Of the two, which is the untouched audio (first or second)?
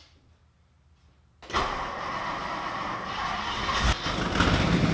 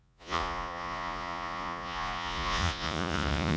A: first